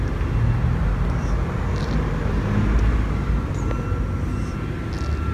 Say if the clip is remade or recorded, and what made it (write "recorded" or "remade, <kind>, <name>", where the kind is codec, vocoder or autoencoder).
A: recorded